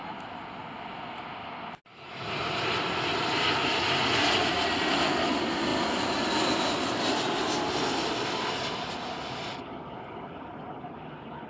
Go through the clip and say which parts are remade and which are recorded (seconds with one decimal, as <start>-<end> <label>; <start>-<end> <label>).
0.0-11.5 recorded